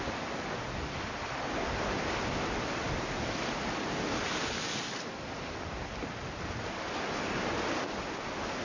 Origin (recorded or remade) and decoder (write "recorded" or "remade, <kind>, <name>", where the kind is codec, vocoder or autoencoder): recorded